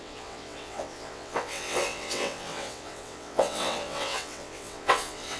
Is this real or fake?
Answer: fake